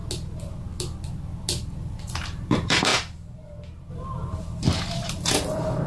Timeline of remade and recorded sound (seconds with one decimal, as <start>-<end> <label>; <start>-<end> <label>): 0.0-1.8 recorded; 1.8-2.9 remade; 2.9-3.9 recorded; 3.9-5.9 remade